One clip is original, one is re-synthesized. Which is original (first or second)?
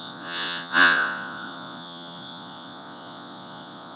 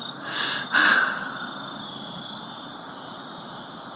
second